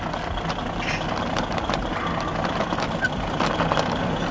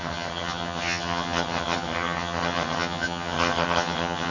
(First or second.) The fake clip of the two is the second